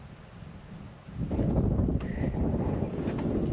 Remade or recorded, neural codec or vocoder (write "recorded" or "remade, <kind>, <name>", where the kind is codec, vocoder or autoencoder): recorded